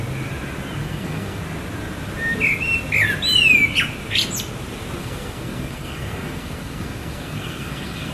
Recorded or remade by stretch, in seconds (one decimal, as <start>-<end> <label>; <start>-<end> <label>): 0.0-0.8 recorded; 0.8-1.4 remade; 1.4-5.0 recorded; 5.0-8.1 remade